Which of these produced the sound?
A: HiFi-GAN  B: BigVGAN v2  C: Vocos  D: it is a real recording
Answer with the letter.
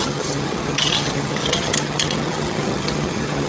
A